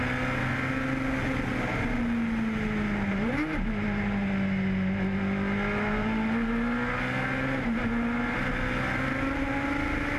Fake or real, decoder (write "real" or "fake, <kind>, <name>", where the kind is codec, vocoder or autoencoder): real